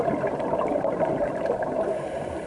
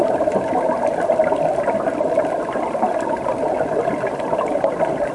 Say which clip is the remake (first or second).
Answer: first